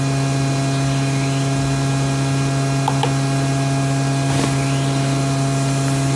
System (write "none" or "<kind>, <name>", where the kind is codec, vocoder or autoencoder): none